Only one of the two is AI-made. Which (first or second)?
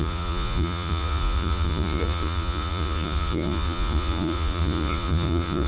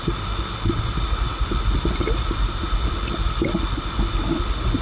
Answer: first